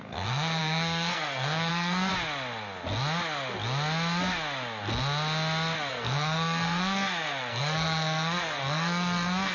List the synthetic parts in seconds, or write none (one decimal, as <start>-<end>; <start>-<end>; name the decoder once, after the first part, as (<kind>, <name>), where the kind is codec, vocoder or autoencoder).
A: 0.0-2.1 (codec, SNAC); 5.9-9.5